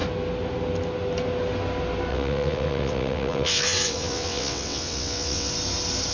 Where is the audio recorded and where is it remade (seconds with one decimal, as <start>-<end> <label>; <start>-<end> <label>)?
0.0-2.1 recorded; 2.1-5.5 remade; 5.5-6.1 recorded

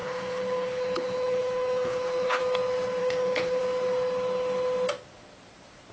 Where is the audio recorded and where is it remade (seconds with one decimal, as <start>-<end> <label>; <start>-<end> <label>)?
0.0-2.4 remade; 2.4-3.0 recorded; 3.0-3.6 remade; 3.6-5.9 recorded

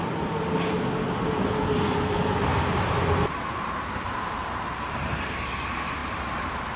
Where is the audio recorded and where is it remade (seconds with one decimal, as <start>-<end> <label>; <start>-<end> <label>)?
0.0-6.8 recorded

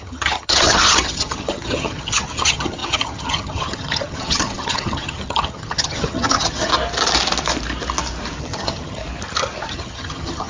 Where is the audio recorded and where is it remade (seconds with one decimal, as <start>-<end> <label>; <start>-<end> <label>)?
0.0-6.7 remade; 6.7-8.4 recorded; 8.4-9.0 remade; 9.0-9.7 recorded; 9.7-10.5 remade

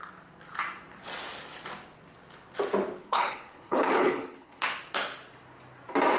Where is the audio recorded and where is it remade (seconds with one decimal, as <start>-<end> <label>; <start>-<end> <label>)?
0.0-3.0 recorded; 3.0-4.6 remade; 4.6-6.2 recorded

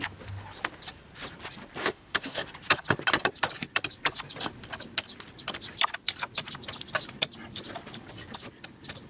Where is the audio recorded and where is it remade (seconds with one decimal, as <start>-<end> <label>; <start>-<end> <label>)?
0.0-1.8 recorded; 1.8-2.4 remade; 2.4-9.1 recorded

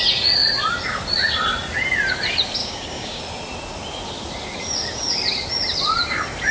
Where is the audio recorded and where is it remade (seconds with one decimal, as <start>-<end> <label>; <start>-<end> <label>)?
0.0-2.6 recorded; 2.6-3.2 remade; 3.2-6.5 recorded

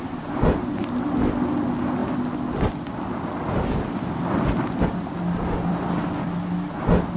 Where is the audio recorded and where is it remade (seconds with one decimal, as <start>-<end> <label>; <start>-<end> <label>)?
0.0-7.2 recorded